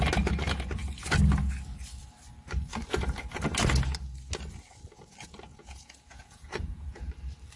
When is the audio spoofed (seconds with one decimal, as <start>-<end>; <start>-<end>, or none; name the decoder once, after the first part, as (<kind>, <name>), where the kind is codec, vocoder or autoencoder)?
5.5-7.1 (vocoder, Vocos)